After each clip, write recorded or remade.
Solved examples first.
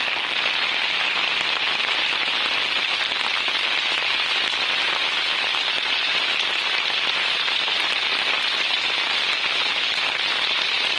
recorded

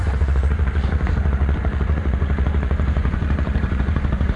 remade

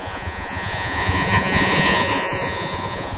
remade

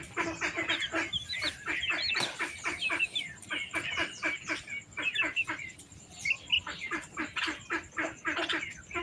recorded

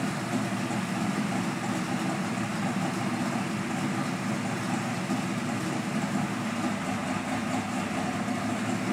recorded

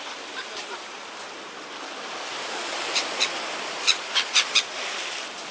remade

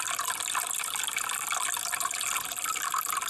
recorded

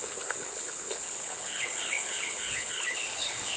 remade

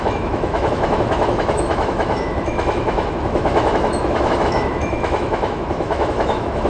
remade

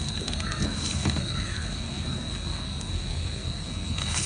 remade